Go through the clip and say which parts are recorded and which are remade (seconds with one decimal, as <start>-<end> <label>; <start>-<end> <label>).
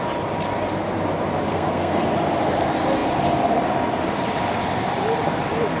0.0-1.5 recorded; 1.5-2.0 remade; 2.0-5.8 recorded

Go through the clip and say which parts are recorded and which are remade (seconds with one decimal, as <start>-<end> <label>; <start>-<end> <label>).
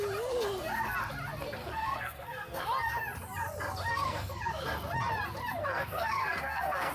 0.0-1.6 recorded; 1.6-2.6 remade; 2.6-3.9 recorded; 3.9-4.4 remade; 4.4-5.6 recorded; 5.6-6.9 remade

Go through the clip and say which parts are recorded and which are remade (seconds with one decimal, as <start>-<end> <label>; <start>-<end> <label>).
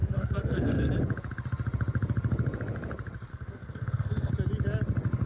0.0-0.9 remade; 0.9-3.3 recorded; 3.3-4.3 remade; 4.3-5.3 recorded